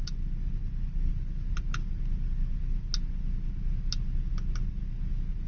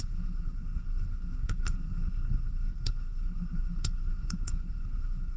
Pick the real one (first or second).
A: first